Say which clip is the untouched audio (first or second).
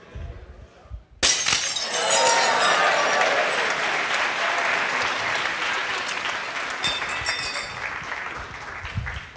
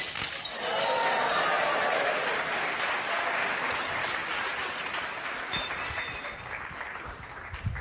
first